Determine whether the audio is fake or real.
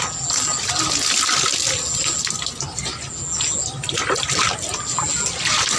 real